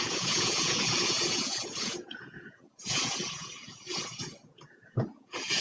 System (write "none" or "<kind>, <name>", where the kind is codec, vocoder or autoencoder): vocoder, Vocos